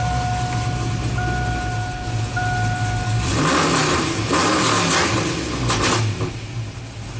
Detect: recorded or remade recorded